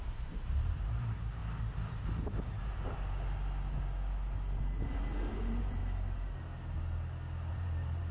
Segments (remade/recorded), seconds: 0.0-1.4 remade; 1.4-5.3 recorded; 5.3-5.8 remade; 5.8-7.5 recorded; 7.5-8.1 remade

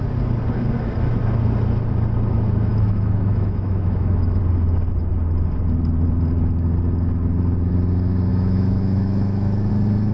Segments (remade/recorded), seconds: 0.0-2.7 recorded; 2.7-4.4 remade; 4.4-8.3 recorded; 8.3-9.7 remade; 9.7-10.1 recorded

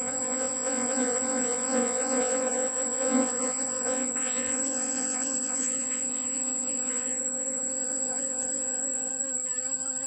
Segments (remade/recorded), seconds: 0.0-9.1 remade; 9.1-10.1 recorded

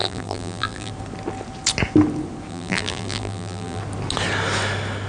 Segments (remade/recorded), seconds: 0.0-0.9 remade; 0.9-2.5 recorded; 2.5-3.8 remade; 3.8-5.1 recorded

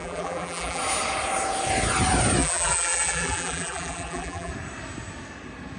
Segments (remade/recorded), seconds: 0.0-0.8 remade; 0.8-2.4 recorded; 2.4-4.5 remade; 4.5-5.8 recorded

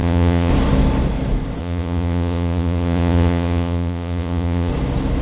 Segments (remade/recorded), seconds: 0.0-0.5 remade; 0.5-1.6 recorded; 1.6-4.7 remade; 4.7-5.2 recorded

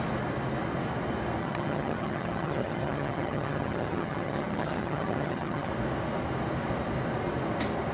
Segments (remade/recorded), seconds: 0.0-1.4 recorded; 1.4-5.7 remade; 5.7-7.9 recorded

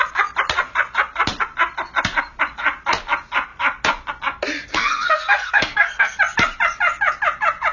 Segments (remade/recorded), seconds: 0.0-4.7 recorded; 4.7-6.2 remade; 6.2-7.7 recorded